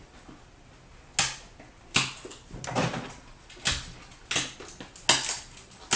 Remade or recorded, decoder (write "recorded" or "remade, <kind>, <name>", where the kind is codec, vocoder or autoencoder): recorded